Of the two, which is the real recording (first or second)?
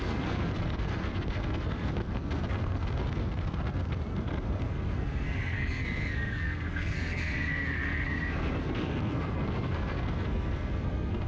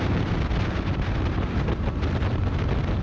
second